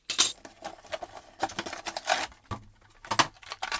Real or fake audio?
real